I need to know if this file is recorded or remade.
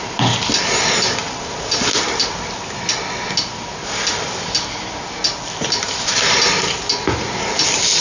recorded